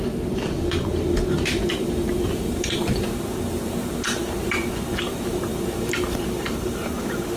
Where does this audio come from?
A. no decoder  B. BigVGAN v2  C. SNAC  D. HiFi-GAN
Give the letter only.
B